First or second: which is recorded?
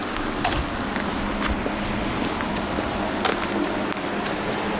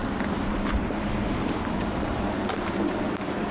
first